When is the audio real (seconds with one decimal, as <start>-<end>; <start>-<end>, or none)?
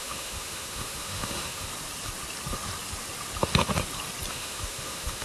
1.7-4.3